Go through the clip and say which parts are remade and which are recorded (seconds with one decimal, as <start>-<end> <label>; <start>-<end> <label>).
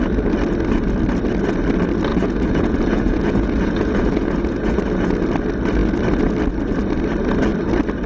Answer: 0.0-2.1 recorded; 2.1-5.2 remade; 5.2-8.1 recorded